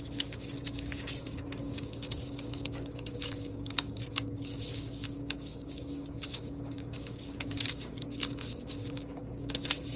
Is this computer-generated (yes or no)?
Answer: yes